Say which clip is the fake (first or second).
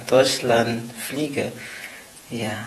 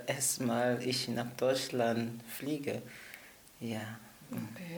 first